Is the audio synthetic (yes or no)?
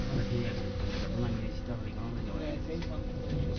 no